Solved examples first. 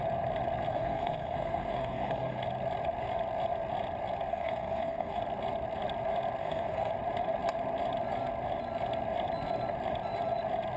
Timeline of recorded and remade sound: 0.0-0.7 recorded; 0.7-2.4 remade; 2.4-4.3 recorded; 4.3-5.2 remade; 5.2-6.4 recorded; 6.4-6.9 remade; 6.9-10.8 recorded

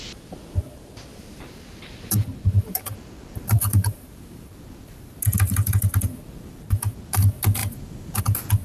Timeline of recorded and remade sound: 0.0-1.1 recorded; 1.1-4.6 remade; 4.6-8.6 recorded

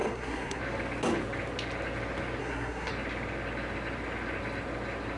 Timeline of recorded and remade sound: 0.0-0.6 remade; 0.6-2.4 recorded; 2.4-2.9 remade; 2.9-5.2 recorded

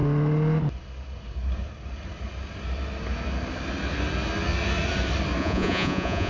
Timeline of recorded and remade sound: 0.0-5.4 recorded; 5.4-6.3 remade

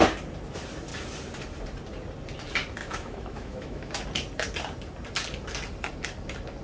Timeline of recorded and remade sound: 0.0-2.8 recorded; 2.8-4.0 remade; 4.0-6.6 recorded

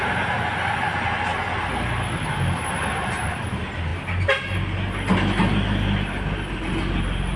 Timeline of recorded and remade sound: 0.0-7.4 recorded

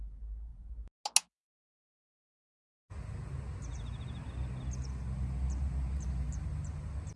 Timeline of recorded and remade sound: 0.0-7.2 recorded